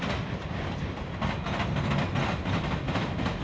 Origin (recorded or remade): recorded